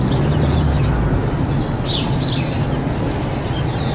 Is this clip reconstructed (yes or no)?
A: no